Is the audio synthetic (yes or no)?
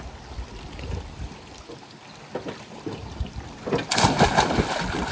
no